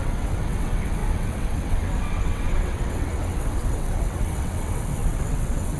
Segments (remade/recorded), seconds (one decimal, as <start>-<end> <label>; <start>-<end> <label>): 0.0-5.8 remade